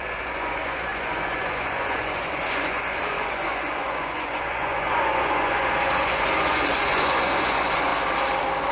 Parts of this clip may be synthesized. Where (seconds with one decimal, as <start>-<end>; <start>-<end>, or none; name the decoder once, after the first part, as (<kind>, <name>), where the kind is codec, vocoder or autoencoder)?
0.0-7.9 (vocoder, Vocos)